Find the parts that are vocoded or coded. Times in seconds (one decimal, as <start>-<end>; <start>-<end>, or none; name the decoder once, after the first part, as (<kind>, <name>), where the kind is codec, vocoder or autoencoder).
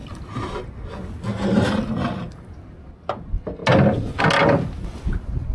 1.3-2.5 (vocoder, BigVGAN v2); 3.6-4.2